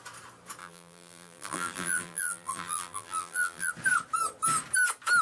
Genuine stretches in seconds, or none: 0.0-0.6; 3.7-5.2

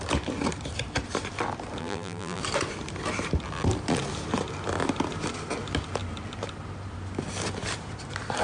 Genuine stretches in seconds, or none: 0.0-1.8; 2.4-8.4

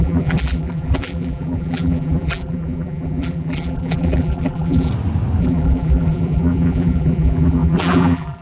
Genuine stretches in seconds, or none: 4.9-5.4